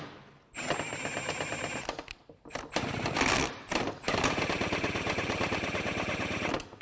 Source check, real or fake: real